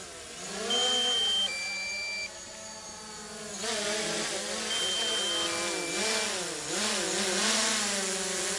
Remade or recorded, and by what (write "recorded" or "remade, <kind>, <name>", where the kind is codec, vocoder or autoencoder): recorded